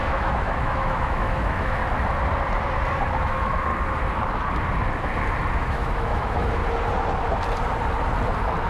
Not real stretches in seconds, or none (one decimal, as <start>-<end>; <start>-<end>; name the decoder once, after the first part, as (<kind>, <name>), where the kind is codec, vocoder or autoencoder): 0.0-1.8 (autoencoder, DAC-VAE); 3.2-3.7; 5.5-6.6